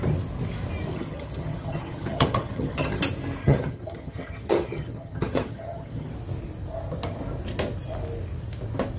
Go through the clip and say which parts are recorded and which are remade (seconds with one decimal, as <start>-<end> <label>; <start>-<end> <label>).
0.0-0.9 recorded; 0.9-3.0 remade; 3.0-3.4 recorded; 3.4-6.1 remade; 6.1-9.0 recorded